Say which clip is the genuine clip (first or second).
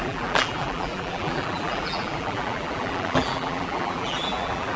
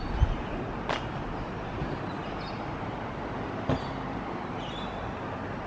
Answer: second